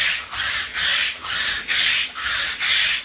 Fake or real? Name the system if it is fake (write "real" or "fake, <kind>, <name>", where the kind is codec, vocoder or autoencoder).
real